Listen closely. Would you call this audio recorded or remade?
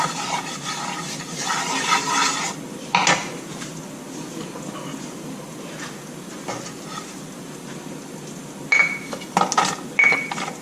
recorded